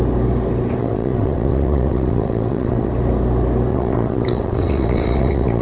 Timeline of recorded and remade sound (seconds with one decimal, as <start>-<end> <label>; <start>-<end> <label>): 0.0-0.8 recorded; 0.8-2.9 remade; 2.9-3.7 recorded; 3.7-5.6 remade